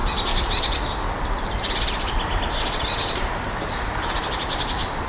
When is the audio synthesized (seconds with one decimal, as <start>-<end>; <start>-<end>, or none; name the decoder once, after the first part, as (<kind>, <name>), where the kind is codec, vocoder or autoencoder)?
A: 3.1-5.1 (vocoder, BigVGAN v2)

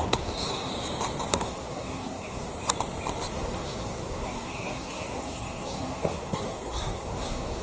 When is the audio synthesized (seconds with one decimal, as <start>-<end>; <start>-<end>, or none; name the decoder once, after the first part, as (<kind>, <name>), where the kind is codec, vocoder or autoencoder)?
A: 0.0-0.7 (codec, SNAC); 1.3-2.5; 3.3-7.6

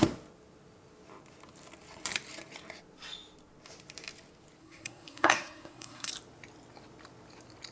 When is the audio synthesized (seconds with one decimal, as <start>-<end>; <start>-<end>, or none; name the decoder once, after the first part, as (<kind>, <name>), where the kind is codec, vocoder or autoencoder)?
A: 4.6-6.1 (codec, SNAC)